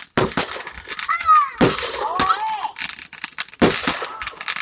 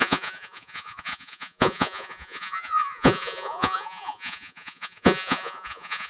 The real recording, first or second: first